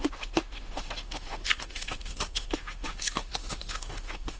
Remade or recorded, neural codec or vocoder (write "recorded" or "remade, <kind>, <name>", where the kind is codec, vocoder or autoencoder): remade, autoencoder, DAC-VAE